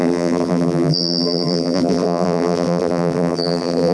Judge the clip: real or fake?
fake